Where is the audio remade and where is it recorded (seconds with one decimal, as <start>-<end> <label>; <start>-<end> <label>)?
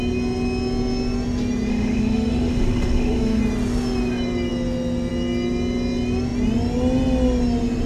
0.0-1.7 recorded; 1.7-3.4 remade; 3.4-7.9 recorded